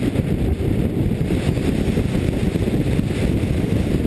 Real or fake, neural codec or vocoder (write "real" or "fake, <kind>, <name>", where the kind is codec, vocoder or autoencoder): real